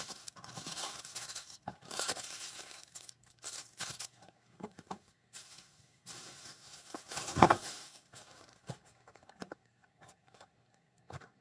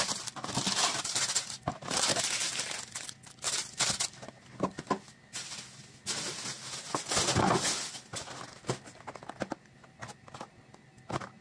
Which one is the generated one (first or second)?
first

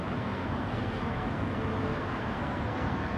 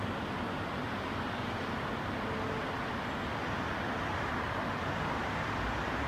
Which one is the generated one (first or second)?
first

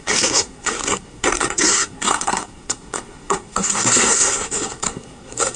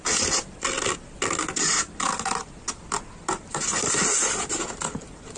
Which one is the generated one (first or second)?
first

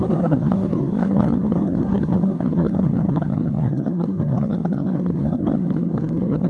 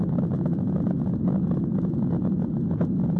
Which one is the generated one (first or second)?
first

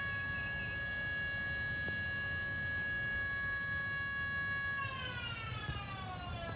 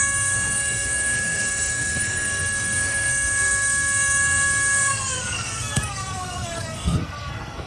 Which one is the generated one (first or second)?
second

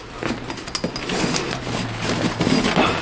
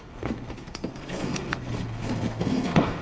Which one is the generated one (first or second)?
second